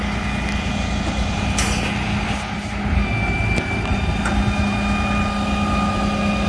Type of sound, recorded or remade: recorded